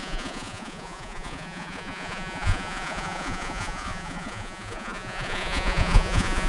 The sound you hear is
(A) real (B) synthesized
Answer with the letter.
B